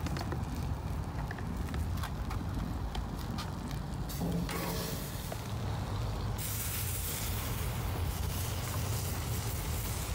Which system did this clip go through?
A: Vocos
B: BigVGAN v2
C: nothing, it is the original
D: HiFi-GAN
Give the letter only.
C